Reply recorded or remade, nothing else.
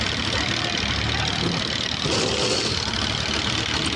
remade